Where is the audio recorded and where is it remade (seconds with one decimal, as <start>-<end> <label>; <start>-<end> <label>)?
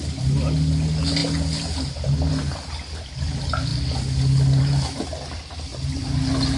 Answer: 0.0-6.6 recorded